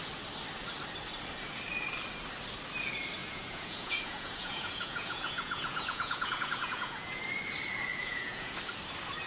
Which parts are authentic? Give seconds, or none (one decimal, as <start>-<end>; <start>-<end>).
0.0-3.2; 7.2-7.9; 8.6-9.3